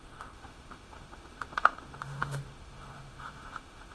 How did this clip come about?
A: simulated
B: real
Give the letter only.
A